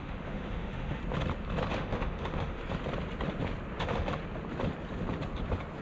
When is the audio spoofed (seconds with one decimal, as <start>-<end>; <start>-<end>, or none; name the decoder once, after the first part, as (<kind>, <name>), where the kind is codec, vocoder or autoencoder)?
0.0-1.0 (autoencoder, DAC-VAE); 1.7-2.6; 3.8-4.2